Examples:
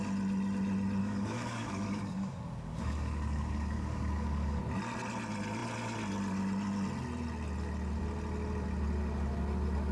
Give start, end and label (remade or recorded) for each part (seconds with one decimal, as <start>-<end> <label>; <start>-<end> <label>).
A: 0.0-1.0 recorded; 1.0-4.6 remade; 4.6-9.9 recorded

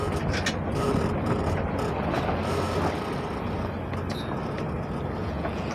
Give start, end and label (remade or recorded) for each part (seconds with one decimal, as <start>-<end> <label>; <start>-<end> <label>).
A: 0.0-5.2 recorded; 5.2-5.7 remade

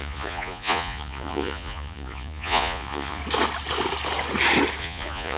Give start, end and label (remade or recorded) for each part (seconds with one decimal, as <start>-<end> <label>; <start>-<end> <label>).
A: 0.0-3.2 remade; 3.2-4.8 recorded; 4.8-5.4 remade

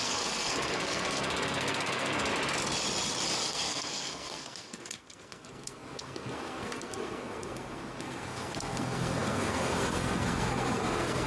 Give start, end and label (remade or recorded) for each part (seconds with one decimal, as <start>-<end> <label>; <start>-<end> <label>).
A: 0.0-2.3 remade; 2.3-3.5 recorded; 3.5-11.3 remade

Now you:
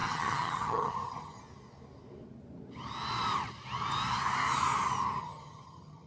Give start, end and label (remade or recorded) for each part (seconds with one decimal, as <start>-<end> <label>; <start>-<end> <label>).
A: 0.0-1.4 remade; 1.4-5.2 recorded; 5.2-6.1 remade

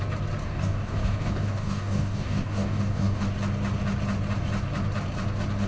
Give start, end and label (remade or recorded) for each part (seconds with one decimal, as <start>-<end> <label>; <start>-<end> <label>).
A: 0.0-0.4 recorded; 0.4-3.2 remade; 3.2-5.7 recorded